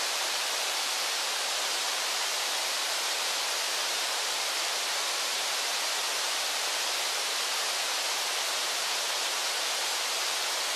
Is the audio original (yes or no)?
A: no